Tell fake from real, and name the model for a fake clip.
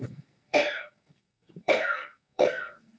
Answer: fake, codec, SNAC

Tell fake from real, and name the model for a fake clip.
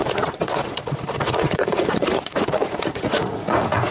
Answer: fake, vocoder, Vocos